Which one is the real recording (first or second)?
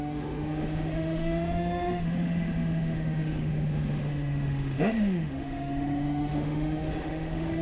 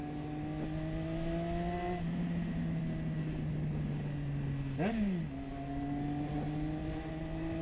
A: second